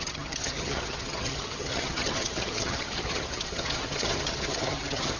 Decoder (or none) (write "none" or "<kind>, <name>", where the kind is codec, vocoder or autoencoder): vocoder, HiFi-GAN